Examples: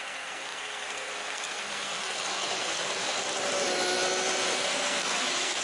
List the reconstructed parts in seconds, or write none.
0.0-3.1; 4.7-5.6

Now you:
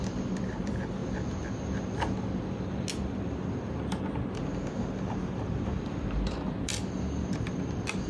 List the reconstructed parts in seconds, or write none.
0.0-1.0; 5.0-6.7; 7.2-8.1

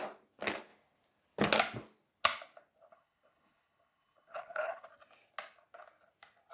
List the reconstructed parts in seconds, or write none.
2.9-4.9